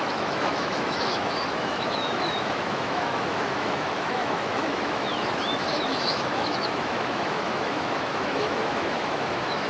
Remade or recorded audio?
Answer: remade